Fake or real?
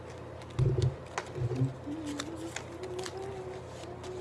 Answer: real